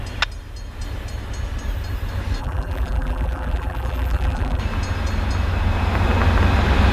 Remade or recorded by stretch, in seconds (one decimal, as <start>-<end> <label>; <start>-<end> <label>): 0.0-2.4 recorded; 2.4-4.6 remade; 4.6-6.9 recorded